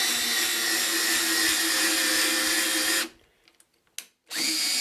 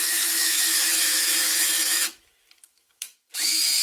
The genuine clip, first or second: first